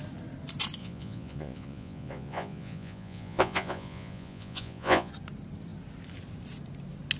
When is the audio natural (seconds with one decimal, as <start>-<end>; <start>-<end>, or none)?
0.0-0.8; 5.1-7.2